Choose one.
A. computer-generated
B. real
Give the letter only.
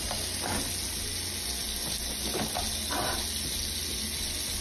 B